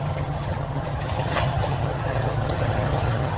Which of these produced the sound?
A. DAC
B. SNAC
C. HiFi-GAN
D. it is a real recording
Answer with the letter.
C